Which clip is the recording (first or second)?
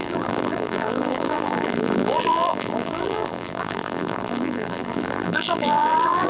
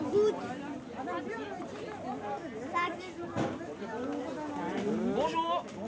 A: second